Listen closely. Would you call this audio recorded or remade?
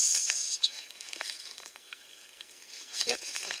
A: remade